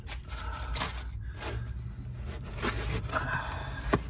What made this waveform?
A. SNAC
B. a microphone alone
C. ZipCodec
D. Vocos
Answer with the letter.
B